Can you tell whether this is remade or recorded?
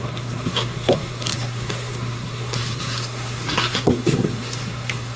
remade